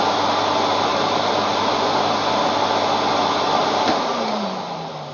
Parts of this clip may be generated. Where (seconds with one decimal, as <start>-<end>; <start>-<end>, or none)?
0.9-1.8; 3.6-5.1